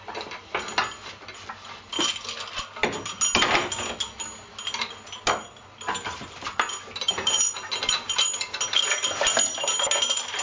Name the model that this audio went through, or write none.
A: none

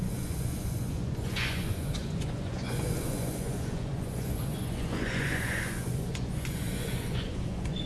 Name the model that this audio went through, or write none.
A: vocoder, Vocos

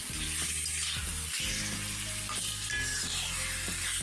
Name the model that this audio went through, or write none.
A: none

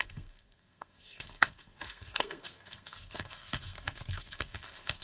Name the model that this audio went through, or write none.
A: codec, SNAC